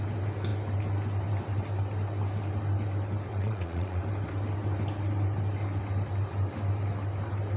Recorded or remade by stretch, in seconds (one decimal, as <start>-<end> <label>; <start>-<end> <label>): 0.0-3.3 recorded; 3.3-4.0 remade; 4.0-7.6 recorded